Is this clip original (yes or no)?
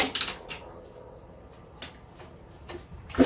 yes